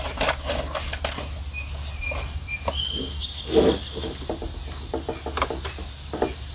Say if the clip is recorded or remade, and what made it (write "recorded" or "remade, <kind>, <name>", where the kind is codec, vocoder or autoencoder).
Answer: recorded